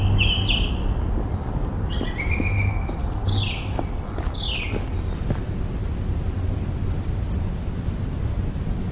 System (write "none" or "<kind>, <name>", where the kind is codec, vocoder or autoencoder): none